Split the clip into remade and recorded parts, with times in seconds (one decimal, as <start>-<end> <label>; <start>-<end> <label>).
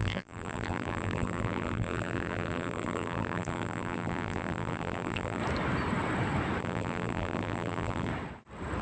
0.0-5.4 remade; 5.4-6.6 recorded; 6.6-8.1 remade; 8.1-8.8 recorded